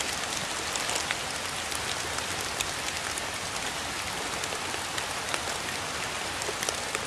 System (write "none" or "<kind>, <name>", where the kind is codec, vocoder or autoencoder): none